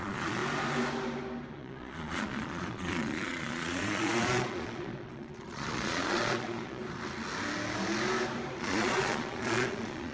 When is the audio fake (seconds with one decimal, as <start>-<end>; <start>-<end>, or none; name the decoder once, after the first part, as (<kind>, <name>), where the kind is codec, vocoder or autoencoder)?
0.0-0.4 (vocoder, Vocos); 1.5-6.8; 8.6-10.1